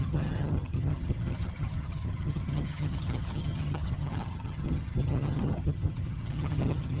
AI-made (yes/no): yes